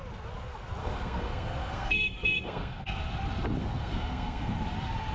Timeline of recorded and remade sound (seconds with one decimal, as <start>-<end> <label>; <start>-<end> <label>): 0.0-0.8 recorded; 0.8-3.0 remade; 3.0-3.6 recorded; 3.6-4.6 remade; 4.6-5.1 recorded